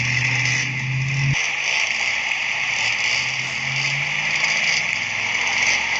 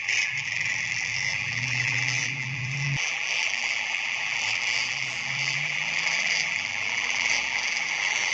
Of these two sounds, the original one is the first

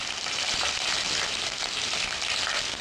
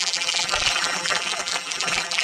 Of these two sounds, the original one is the first